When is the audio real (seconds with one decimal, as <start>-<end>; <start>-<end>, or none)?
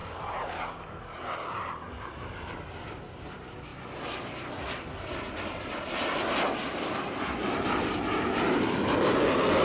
0.0-9.6